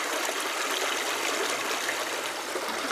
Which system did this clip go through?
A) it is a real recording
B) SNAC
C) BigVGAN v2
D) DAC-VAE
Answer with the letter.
A